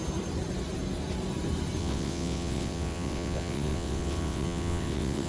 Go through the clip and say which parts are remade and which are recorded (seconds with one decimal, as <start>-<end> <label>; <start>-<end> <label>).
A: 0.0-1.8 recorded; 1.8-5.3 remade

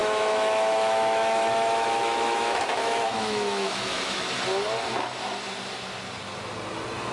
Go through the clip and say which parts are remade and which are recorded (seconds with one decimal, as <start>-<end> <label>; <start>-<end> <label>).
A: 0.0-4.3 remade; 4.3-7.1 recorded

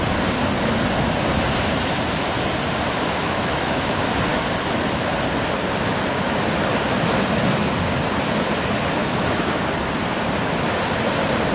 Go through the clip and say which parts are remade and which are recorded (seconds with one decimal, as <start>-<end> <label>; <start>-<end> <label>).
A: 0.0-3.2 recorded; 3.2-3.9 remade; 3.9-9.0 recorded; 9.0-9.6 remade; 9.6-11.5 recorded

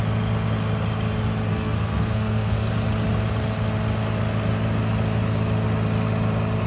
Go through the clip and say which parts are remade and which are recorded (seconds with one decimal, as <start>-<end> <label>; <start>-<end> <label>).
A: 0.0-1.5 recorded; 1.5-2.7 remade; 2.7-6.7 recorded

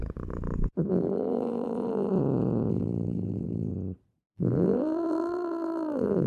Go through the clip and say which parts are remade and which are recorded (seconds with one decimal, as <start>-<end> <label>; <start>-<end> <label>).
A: 0.0-0.9 recorded; 0.9-2.1 remade; 2.1-2.7 recorded; 2.7-3.7 remade; 3.7-4.3 recorded; 4.3-6.3 remade

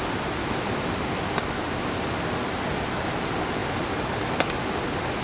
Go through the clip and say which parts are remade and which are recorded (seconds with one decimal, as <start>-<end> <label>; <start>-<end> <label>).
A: 0.0-5.2 recorded

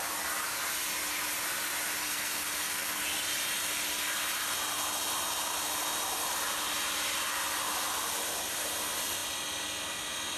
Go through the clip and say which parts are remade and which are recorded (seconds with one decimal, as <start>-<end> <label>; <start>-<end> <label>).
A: 0.0-2.0 recorded; 2.0-3.0 remade; 3.0-10.4 recorded